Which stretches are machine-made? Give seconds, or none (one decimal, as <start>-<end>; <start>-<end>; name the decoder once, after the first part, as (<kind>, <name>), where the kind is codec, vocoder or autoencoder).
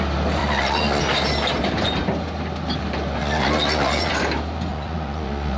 0.4-1.0 (vocoder, Vocos); 3.2-4.1; 4.7-5.6